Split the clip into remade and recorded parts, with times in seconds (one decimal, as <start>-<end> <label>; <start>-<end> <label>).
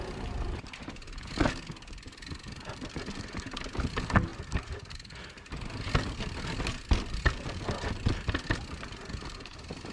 0.0-4.3 recorded; 4.3-5.2 remade; 5.2-9.9 recorded